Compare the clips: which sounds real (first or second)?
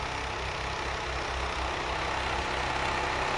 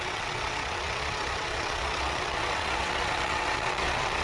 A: first